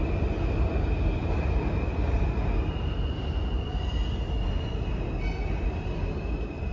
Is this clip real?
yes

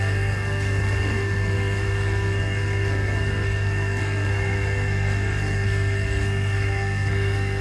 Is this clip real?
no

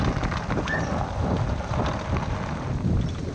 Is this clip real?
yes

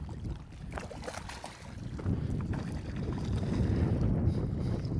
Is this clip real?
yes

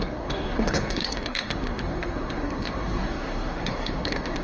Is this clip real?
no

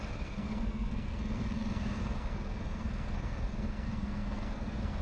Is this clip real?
no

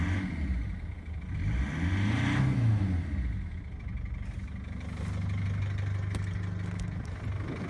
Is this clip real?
yes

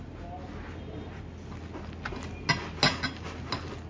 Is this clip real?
yes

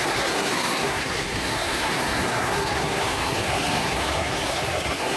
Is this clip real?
no